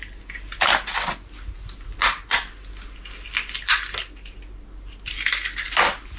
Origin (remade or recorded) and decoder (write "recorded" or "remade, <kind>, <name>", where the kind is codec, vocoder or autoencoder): recorded